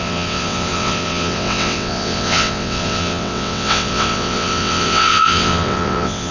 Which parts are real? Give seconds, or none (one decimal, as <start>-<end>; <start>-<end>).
none